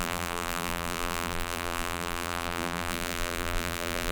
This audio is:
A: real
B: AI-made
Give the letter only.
B